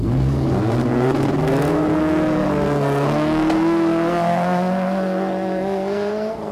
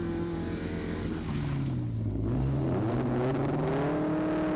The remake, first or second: first